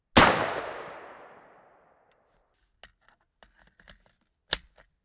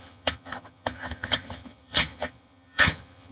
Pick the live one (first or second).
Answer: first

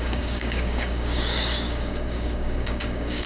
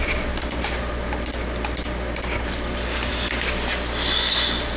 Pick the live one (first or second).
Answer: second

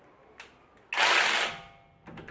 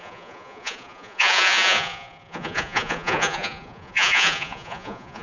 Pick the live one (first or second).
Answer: first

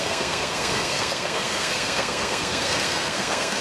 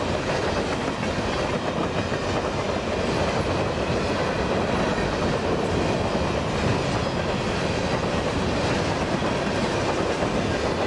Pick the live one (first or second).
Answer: second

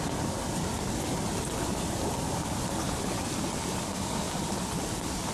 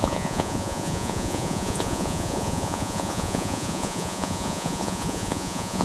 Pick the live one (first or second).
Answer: first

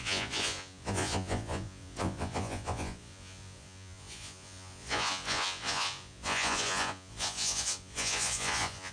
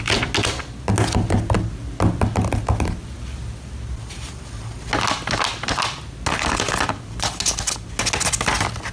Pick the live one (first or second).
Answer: second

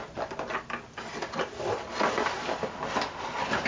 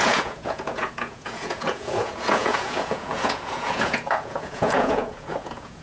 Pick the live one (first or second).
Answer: first